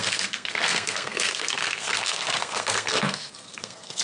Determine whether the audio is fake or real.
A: fake